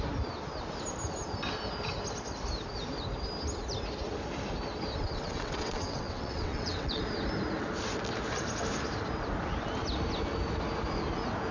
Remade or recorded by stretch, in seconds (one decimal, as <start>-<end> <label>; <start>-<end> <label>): 0.0-5.0 recorded; 5.0-7.0 remade; 7.0-11.5 recorded